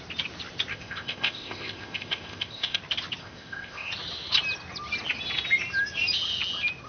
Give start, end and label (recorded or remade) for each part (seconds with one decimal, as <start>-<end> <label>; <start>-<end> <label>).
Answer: 0.0-0.7 recorded; 0.7-2.8 remade; 2.8-3.2 recorded; 3.2-3.9 remade; 3.9-6.9 recorded